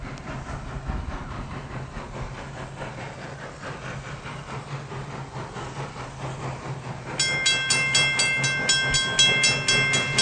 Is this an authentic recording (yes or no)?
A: yes